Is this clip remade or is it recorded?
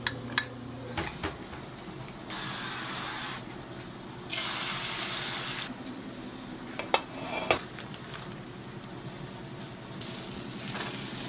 recorded